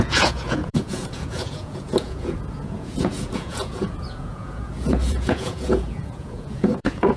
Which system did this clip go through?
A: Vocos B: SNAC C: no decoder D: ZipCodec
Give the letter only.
A